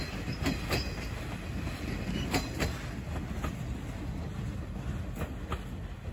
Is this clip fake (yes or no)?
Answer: no